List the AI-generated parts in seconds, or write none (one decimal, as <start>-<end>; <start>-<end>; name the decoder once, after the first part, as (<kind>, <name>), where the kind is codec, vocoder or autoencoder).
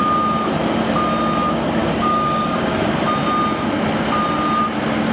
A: 1.8-2.9 (codec, DAC)